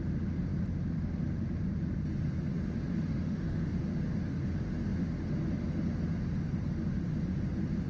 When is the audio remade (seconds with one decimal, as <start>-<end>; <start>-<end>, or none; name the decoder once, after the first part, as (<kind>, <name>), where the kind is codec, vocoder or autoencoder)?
3.1-3.7 (autoencoder, DAC-VAE)